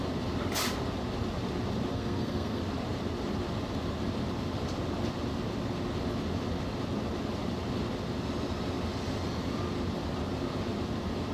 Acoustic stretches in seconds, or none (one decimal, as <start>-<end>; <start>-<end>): 0.0-1.9; 2.6-11.3